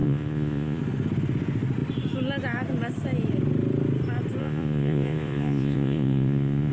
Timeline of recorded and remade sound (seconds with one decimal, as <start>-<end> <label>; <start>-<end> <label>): 0.0-0.8 remade; 0.8-4.4 recorded; 4.4-6.7 remade